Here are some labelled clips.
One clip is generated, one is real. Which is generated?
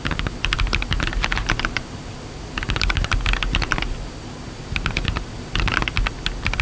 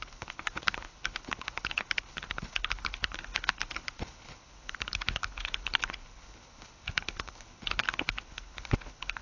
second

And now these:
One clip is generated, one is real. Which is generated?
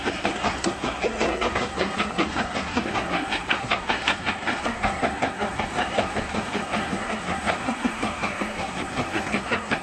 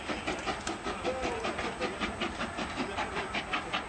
first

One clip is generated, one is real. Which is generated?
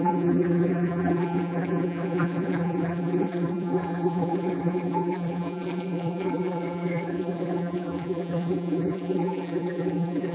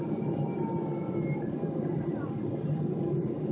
first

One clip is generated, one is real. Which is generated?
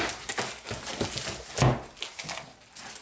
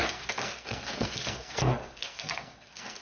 second